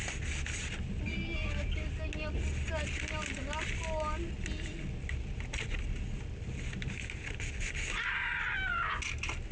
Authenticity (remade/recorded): recorded